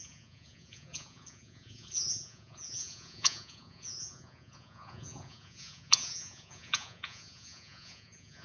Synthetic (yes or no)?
yes